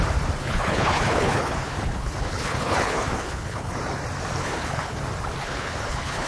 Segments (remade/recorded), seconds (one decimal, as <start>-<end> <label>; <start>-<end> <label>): 0.0-0.4 recorded; 0.4-3.8 remade; 3.8-4.4 recorded; 4.4-5.0 remade; 5.0-5.4 recorded; 5.4-6.3 remade

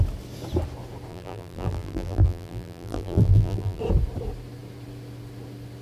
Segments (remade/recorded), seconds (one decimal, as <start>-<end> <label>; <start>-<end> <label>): 0.0-1.1 recorded; 1.1-3.8 remade; 3.8-5.8 recorded

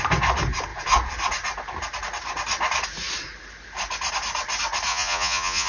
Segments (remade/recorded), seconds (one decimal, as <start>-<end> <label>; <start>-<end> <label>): 0.0-4.9 recorded; 4.9-5.7 remade

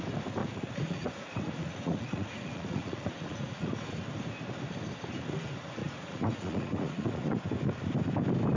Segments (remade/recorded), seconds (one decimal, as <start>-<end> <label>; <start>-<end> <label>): 0.0-0.4 recorded; 0.4-3.7 remade; 3.7-5.8 recorded; 5.8-7.4 remade; 7.4-8.6 recorded

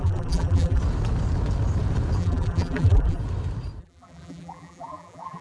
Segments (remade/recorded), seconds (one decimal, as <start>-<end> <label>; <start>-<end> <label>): 0.0-0.8 remade; 0.8-2.2 recorded; 2.2-3.2 remade; 3.2-3.8 recorded; 3.8-5.4 remade